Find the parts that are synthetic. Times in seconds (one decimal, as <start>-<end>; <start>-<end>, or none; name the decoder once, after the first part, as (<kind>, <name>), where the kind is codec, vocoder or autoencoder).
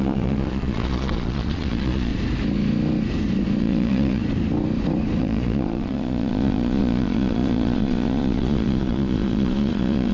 0.0-2.1 (vocoder, Vocos); 3.6-4.2; 5.2-10.1